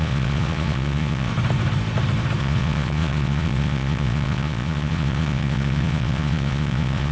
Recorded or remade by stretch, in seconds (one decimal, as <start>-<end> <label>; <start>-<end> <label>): 0.0-1.3 remade; 1.3-2.4 recorded; 2.4-7.1 remade